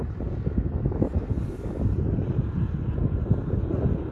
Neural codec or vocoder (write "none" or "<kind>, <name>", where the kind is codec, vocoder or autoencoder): none